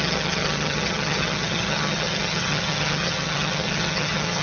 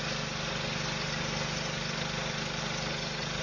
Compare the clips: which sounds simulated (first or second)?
first